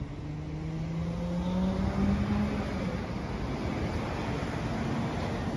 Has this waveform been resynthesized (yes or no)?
no